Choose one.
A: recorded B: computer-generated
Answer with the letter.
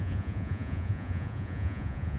B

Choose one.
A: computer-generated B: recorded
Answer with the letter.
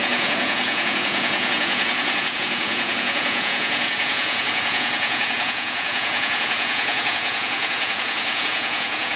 A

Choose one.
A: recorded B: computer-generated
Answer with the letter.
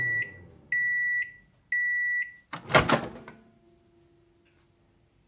A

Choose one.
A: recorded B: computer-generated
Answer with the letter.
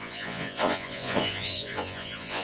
B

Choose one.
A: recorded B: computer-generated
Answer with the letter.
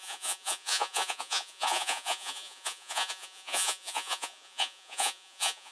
B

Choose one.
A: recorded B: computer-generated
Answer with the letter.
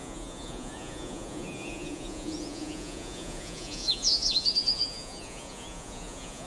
B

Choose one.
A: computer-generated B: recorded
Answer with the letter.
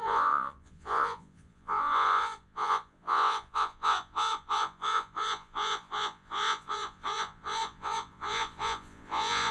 A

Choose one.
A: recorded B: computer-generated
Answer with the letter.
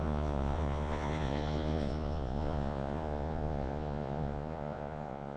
B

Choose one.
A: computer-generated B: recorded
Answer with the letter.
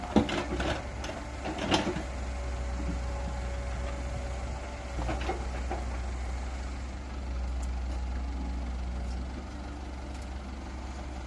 B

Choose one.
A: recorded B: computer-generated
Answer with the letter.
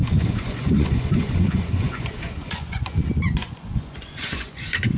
B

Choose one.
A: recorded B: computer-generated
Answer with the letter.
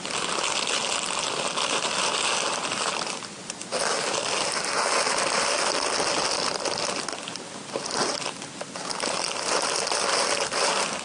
A